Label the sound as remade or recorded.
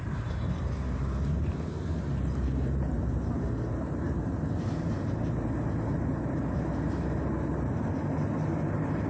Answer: remade